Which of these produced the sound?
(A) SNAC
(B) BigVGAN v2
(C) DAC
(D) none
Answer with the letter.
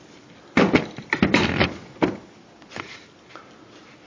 D